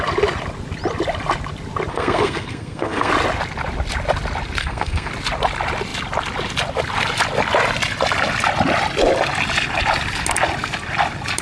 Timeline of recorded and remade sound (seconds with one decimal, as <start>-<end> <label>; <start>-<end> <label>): 0.0-1.9 recorded; 1.9-3.1 remade; 3.1-4.6 recorded; 4.6-5.1 remade; 5.1-11.4 recorded